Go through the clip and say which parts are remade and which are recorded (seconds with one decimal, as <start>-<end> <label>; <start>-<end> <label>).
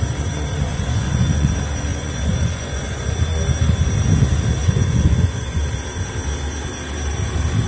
0.0-0.7 recorded; 0.7-1.5 remade; 1.5-1.9 recorded; 1.9-3.2 remade; 3.2-4.6 recorded; 4.6-5.6 remade; 5.6-7.7 recorded